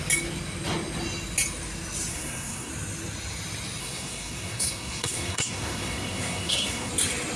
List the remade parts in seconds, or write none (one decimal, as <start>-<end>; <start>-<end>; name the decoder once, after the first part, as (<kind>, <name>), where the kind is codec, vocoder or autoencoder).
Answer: 2.1-2.7 (codec, SNAC); 3.8-6.9